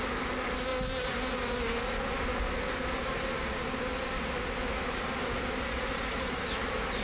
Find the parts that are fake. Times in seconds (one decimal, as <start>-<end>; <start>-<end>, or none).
none